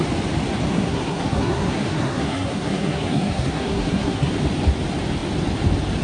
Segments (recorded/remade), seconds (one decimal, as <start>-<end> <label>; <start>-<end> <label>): 0.0-0.7 recorded; 0.7-4.3 remade; 4.3-6.0 recorded